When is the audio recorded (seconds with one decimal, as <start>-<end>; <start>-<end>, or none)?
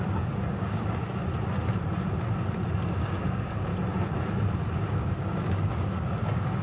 1.2-2.9; 3.7-4.9